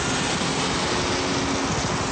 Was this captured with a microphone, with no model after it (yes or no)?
yes